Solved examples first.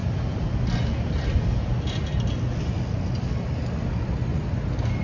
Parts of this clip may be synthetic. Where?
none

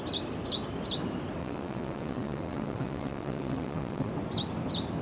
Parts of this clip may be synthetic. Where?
1.4-4.1 (vocoder, WaveNeXt)

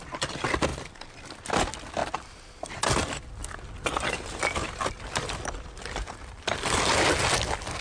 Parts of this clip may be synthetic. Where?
none